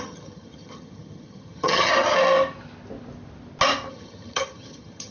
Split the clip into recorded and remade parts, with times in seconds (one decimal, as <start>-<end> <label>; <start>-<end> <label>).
0.0-1.9 remade; 1.9-3.9 recorded; 3.9-5.1 remade